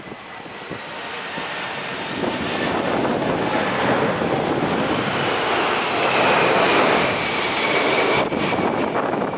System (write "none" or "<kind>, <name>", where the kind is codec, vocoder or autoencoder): none